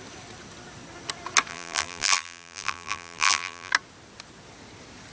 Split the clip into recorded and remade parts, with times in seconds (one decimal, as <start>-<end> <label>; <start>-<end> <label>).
0.0-1.5 recorded; 1.5-3.7 remade; 3.7-5.1 recorded